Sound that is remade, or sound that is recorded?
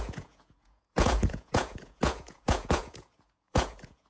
remade